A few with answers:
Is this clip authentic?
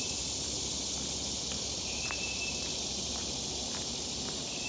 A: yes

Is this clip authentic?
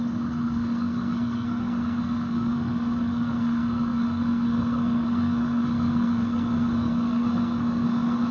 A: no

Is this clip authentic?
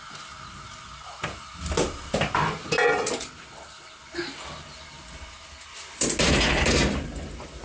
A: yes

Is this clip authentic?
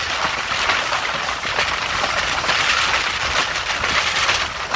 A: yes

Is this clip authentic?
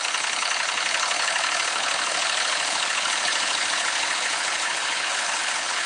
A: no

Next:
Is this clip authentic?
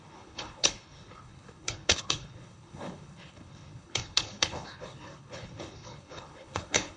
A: no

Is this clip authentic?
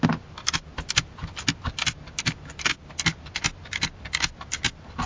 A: yes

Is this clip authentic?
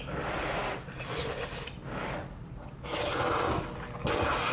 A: yes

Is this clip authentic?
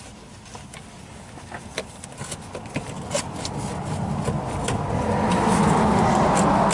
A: yes